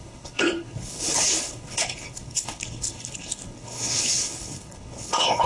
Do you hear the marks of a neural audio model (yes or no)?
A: yes